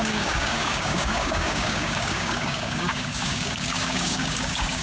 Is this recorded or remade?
remade